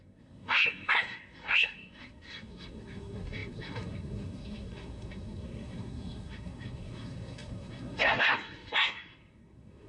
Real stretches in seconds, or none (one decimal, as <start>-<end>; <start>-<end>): none